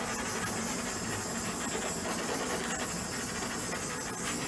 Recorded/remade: recorded